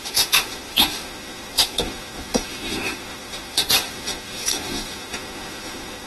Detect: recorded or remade remade